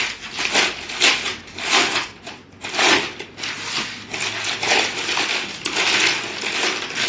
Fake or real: real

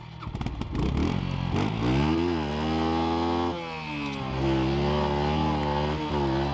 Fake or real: real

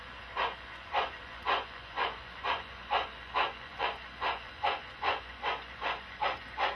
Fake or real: fake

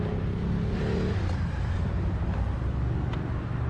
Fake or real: real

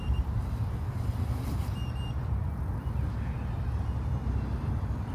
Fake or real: real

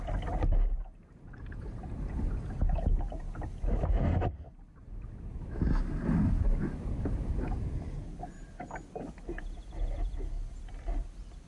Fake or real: real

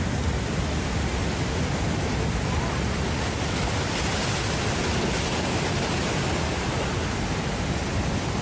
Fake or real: real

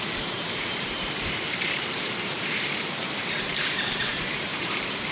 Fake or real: fake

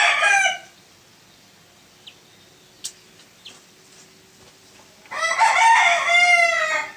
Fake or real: real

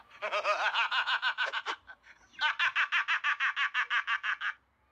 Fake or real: real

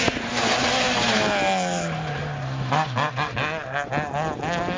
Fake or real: real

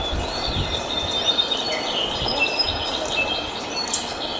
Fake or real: real